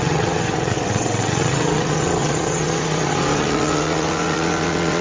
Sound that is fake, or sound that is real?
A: fake